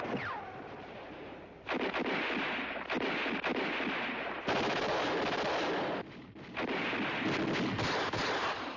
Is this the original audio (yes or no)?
no